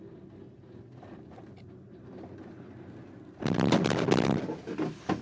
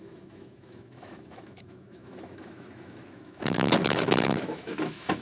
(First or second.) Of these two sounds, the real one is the first